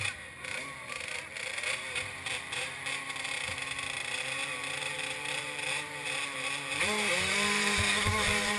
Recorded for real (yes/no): no